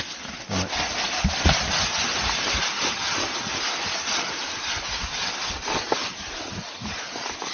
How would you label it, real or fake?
real